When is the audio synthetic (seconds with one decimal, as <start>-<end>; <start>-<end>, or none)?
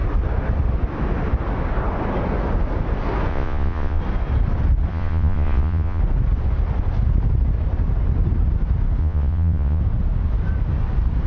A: 3.3-4.0; 4.9-6.0; 9.0-9.8